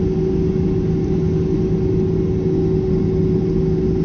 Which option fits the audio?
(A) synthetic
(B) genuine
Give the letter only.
B